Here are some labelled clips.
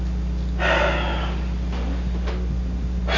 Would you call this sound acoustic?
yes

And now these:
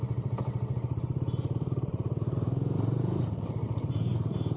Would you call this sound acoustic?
no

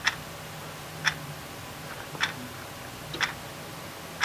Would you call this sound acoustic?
yes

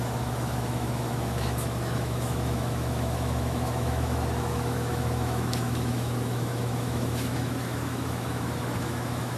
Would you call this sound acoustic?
no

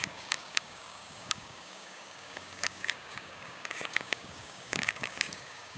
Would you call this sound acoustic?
no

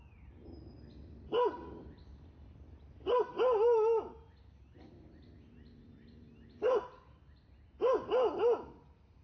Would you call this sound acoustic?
yes